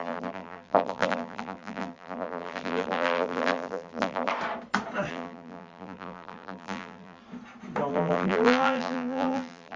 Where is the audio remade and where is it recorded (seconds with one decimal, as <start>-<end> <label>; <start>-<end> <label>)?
0.0-4.3 remade; 4.3-5.1 recorded; 5.1-7.2 remade; 7.2-7.9 recorded; 7.9-9.8 remade